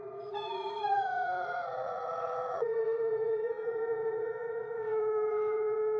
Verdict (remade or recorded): remade